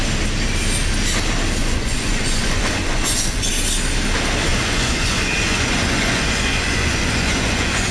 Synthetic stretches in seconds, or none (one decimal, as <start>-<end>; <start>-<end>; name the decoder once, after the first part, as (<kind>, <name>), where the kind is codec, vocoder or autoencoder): 1.6-3.5 (vocoder, Vocos); 4.5-7.9